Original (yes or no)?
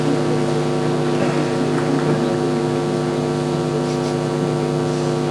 yes